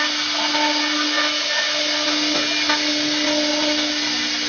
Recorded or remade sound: recorded